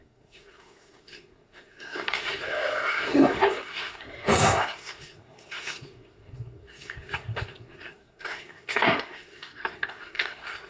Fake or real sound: fake